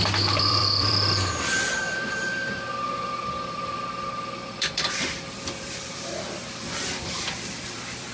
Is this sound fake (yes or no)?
yes